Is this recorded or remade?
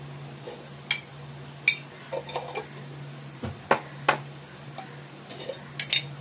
recorded